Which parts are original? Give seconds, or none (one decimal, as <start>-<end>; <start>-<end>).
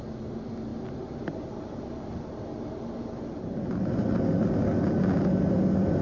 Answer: 0.0-6.0